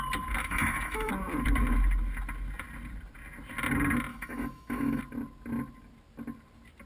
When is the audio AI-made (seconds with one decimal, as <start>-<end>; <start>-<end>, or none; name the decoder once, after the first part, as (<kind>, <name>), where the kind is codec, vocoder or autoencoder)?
0.4-1.1 (autoencoder, DAC-VAE); 4.1-5.0